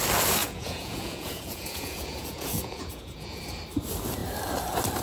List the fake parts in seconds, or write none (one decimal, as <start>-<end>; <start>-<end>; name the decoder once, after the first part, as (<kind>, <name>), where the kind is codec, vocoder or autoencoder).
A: 0.4-3.4 (vocoder, Vocos)